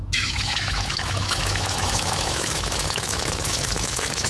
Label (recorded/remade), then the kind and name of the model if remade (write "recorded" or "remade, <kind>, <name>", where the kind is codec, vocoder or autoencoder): remade, autoencoder, DAC-VAE